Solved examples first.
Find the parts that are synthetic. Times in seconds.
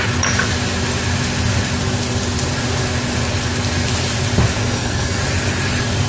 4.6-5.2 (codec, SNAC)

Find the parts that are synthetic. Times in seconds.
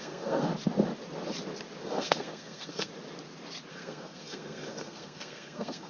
0.0-0.5 (codec, SNAC); 1.8-2.9; 3.7-5.9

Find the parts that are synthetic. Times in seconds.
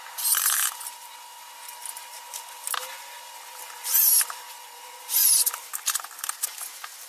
none